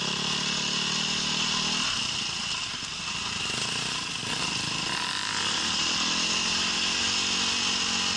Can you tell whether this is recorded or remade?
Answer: recorded